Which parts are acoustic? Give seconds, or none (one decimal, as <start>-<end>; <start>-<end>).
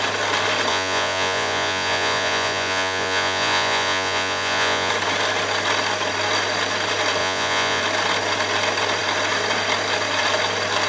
0.0-0.7; 4.9-7.2; 7.8-10.9